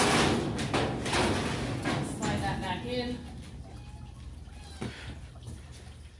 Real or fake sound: real